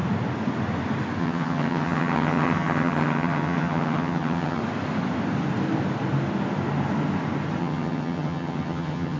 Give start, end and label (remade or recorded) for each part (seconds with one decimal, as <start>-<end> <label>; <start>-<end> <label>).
0.0-1.2 recorded; 1.2-4.6 remade; 4.6-7.6 recorded; 7.6-9.2 remade